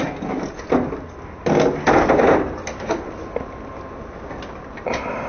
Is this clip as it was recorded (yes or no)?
yes